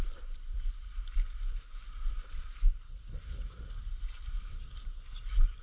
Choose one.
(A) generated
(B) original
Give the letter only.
A